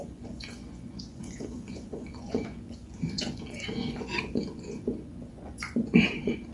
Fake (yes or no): yes